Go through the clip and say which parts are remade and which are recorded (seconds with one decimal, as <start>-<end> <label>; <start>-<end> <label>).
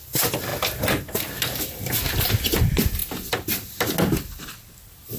0.0-5.2 recorded